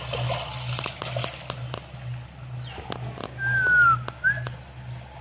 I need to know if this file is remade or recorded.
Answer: recorded